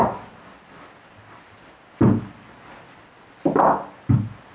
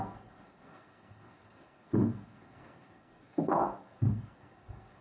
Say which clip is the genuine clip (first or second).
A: first